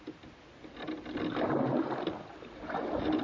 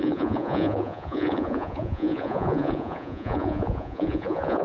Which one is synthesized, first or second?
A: second